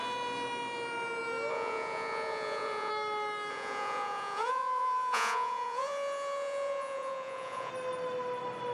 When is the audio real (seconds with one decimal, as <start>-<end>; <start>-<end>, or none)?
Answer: 0.0-1.5; 2.9-3.5; 7.7-8.7